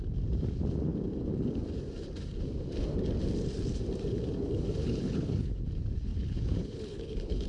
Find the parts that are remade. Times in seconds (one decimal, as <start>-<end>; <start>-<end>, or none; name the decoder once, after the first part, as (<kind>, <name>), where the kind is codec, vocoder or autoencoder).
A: 4.8-5.6 (codec, HILCodec); 6.1-7.5